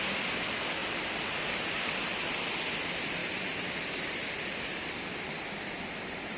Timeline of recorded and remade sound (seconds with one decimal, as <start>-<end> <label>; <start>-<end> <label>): 0.0-6.4 recorded